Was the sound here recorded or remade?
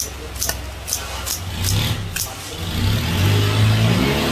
recorded